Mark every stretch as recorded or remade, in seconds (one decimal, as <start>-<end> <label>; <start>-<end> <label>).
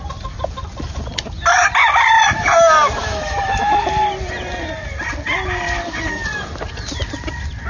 0.0-3.0 recorded; 3.0-3.7 remade; 3.7-7.7 recorded